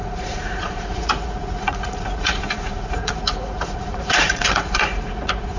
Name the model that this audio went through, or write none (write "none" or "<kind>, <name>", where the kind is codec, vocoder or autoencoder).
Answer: vocoder, Vocos